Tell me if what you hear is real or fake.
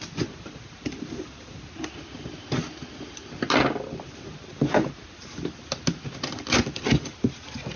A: real